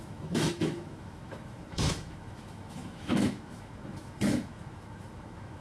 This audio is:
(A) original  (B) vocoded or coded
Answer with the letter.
B